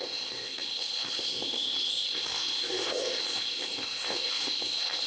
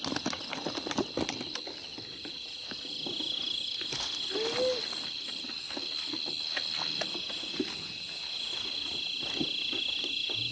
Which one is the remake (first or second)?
first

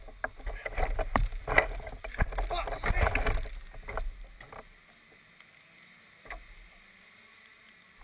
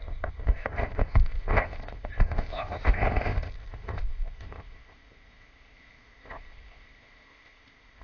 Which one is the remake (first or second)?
second